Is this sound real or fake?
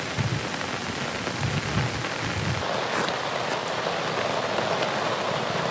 real